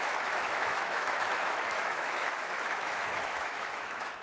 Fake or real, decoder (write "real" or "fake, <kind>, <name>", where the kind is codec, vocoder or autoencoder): fake, autoencoder, DAC-VAE